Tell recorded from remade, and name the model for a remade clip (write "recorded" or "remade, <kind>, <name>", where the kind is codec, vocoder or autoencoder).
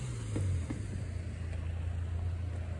recorded